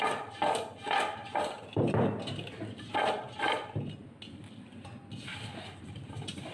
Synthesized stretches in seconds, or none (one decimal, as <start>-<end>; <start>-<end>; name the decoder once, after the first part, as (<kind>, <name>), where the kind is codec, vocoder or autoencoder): 1.2-3.9 (vocoder, BigVGAN v2); 5.3-6.1